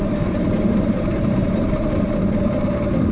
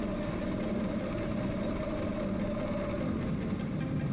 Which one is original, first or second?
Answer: second